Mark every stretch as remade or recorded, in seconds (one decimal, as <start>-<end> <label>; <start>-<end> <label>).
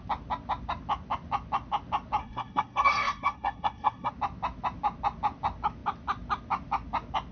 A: 0.0-2.2 recorded; 2.2-4.1 remade; 4.1-7.3 recorded